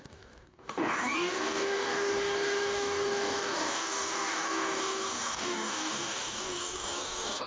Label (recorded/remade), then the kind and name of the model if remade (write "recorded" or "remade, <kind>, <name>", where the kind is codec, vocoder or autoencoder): remade, codec, DAC